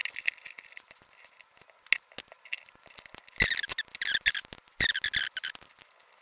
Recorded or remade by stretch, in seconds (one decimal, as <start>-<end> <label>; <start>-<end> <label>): 0.0-6.2 recorded